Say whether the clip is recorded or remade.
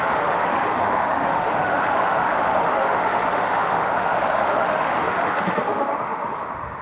remade